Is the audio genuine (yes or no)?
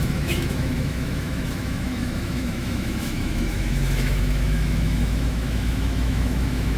no